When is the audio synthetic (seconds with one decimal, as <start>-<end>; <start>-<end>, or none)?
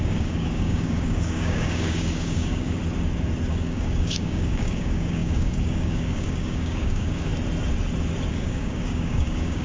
0.0-2.8; 3.5-7.3; 8.3-9.6